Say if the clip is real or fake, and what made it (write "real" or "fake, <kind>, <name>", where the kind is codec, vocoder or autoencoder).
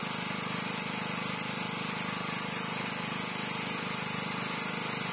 real